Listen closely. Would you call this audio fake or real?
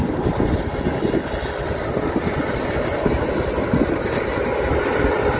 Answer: real